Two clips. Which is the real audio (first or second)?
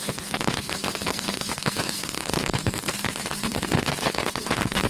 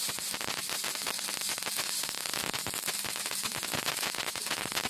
second